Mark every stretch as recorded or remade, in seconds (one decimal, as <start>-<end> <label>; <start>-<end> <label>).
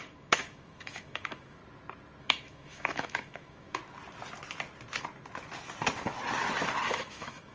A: 0.0-1.6 remade; 1.6-2.2 recorded; 2.2-3.8 remade; 3.8-6.9 recorded; 6.9-7.5 remade